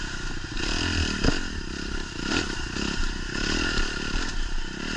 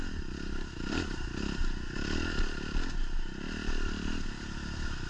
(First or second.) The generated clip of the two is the first